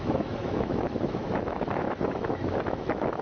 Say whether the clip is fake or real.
fake